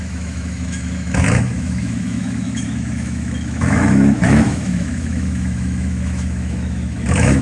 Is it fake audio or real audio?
fake